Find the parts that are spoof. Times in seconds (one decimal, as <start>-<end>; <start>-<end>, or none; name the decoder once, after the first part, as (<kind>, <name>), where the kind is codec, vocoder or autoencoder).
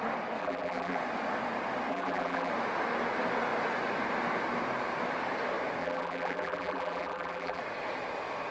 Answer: 0.4-1.0 (vocoder, BigVGAN v2); 1.9-2.5; 5.8-7.6